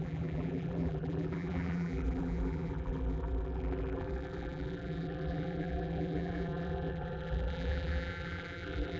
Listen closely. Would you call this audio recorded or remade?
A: remade